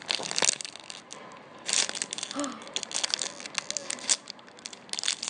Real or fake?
real